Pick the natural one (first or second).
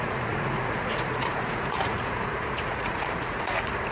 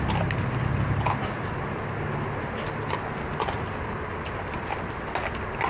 second